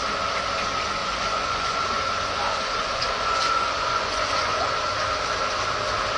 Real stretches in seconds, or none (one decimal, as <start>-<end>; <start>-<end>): 0.0-1.0; 4.7-6.2